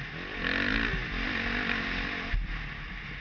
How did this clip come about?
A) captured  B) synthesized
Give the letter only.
A